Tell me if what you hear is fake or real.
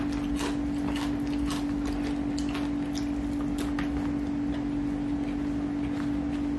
real